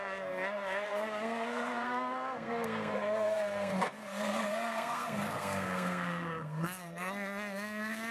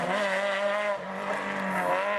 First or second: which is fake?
first